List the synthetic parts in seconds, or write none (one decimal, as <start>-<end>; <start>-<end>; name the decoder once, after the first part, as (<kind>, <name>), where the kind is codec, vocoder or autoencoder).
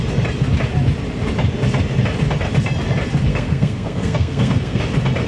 3.3-4.8 (codec, SNAC)